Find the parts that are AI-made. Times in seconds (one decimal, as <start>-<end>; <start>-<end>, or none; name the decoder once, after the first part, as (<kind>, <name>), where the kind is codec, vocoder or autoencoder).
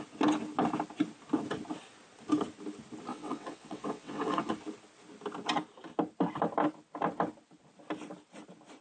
3.1-4.5 (vocoder, WaveNeXt)